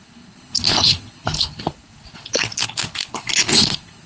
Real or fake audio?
fake